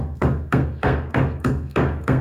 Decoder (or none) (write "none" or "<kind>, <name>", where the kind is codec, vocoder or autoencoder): codec, SNAC